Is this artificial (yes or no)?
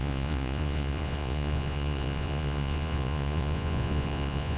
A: yes